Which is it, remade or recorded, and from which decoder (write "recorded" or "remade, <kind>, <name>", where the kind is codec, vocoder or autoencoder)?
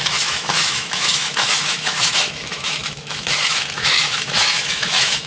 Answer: remade, autoencoder, DAC-VAE